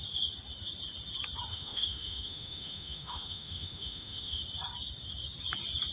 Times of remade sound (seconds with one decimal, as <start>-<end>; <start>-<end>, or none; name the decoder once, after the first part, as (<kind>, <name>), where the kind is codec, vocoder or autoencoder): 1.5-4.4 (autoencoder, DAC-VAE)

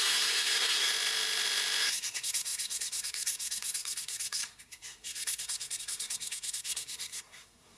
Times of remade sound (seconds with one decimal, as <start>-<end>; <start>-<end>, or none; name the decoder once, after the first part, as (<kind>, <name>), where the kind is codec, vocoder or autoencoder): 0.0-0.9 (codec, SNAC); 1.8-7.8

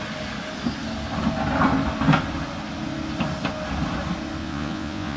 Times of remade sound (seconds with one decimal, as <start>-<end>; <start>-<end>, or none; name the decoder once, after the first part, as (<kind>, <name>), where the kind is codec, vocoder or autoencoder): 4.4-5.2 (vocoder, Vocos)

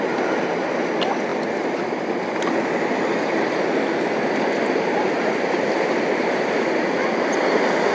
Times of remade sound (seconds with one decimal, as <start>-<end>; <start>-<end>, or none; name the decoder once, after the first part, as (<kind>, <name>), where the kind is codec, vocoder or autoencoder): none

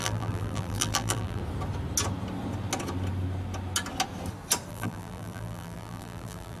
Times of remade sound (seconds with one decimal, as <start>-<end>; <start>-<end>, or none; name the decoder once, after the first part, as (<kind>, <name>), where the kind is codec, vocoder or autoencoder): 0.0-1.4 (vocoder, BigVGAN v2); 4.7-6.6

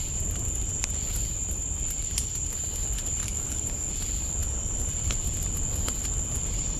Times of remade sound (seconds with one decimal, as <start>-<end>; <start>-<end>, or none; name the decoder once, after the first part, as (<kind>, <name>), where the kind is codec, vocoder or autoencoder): 3.2-3.9 (codec, DAC)

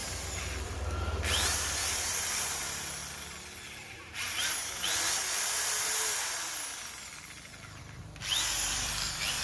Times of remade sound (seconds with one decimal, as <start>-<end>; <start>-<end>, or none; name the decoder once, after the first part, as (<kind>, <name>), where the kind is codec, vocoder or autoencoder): 0.0-3.0 (vocoder, BigVGAN v2); 7.8-9.4